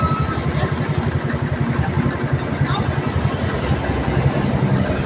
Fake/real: real